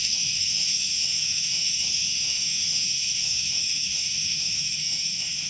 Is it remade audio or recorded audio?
remade